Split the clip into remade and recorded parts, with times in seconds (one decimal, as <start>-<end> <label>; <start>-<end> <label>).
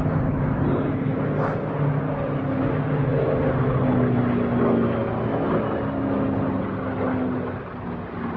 0.0-8.4 recorded